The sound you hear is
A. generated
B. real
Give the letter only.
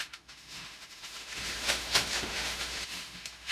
A